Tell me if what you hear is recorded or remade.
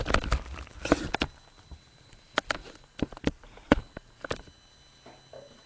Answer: recorded